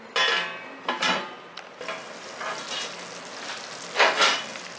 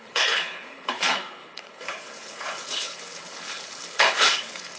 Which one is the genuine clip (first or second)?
first